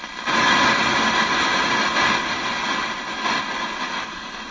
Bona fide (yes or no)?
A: yes